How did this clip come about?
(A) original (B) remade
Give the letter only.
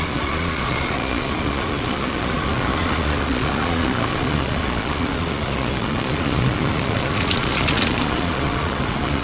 B